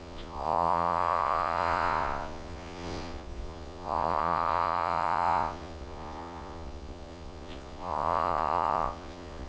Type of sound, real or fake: fake